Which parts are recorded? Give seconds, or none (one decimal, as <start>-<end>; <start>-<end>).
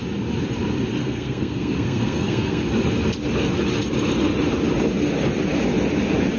0.0-1.0; 2.6-6.4